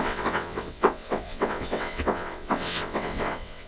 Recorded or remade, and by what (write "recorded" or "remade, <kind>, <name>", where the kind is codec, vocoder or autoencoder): remade, vocoder, WaveNeXt